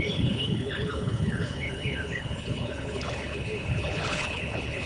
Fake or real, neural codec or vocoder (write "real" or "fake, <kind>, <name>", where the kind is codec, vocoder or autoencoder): fake, codec, HILCodec